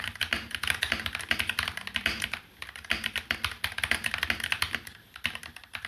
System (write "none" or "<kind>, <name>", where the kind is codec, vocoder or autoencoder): none